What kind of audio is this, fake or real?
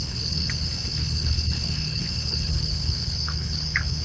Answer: fake